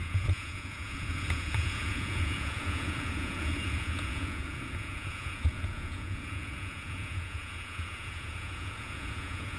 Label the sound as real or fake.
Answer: fake